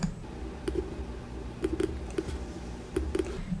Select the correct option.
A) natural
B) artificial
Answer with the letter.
A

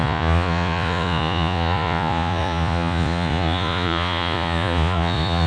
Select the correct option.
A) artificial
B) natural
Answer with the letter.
A